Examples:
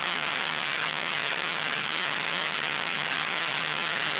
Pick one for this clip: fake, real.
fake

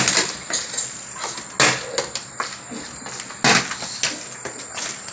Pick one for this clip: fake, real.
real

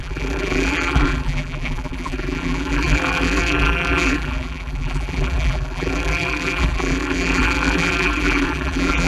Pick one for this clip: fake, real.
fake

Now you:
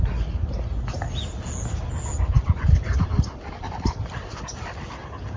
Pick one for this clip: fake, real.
real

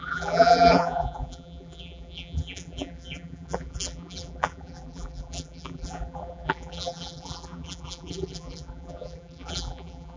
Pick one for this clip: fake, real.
fake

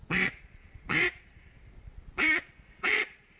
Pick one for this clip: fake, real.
fake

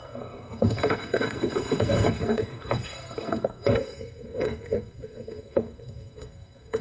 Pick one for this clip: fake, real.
fake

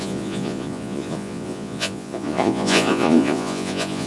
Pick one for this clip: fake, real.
fake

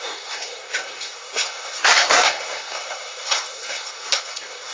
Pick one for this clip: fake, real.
fake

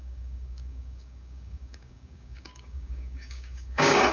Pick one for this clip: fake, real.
fake